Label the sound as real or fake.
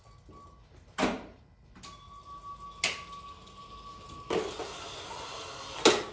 real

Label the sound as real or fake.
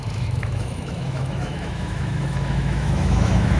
fake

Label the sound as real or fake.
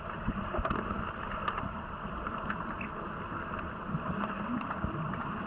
real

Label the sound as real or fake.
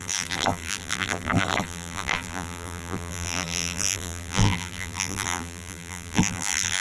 fake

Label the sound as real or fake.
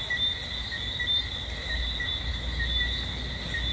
real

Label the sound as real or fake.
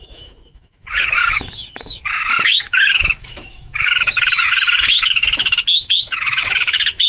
fake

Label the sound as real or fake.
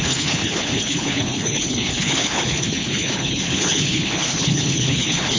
fake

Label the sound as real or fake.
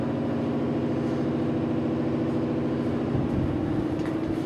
real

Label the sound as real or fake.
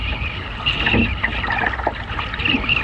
real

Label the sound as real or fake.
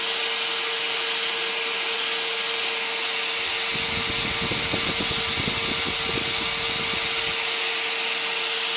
real